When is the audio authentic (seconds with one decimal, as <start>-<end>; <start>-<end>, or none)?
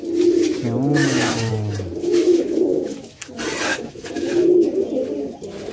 0.0-1.0; 1.5-2.0; 3.3-3.7; 4.5-5.7